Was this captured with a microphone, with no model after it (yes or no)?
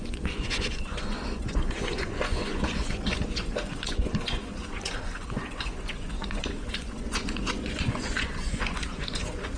no